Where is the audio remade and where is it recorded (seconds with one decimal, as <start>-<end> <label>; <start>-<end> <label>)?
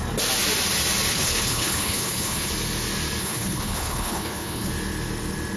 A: 0.0-1.1 recorded; 1.1-2.5 remade; 2.5-3.2 recorded; 3.2-4.7 remade; 4.7-5.6 recorded